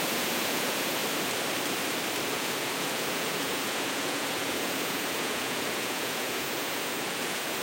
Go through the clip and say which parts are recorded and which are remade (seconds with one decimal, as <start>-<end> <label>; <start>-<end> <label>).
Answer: 0.0-1.0 remade; 1.0-2.3 recorded; 2.3-7.6 remade